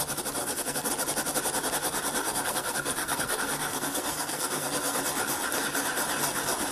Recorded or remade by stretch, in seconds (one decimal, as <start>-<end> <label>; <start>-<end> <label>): 0.0-0.4 recorded; 0.4-0.9 remade; 0.9-2.2 recorded; 2.2-5.0 remade; 5.0-6.7 recorded